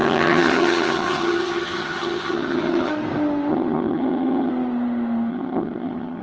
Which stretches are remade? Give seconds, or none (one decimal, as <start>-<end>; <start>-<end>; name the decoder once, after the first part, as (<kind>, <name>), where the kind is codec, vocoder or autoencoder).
0.0-2.9 (vocoder, HiFi-GAN); 3.5-4.5; 5.3-6.2